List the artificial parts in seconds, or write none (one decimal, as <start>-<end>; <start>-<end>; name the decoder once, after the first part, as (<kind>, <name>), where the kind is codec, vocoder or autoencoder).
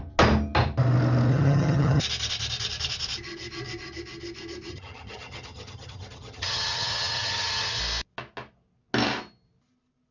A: 1.3-2.0 (vocoder, HiFi-GAN); 4.7-7.8